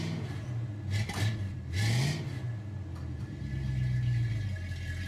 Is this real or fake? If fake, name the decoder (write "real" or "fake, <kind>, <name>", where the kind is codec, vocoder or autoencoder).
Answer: real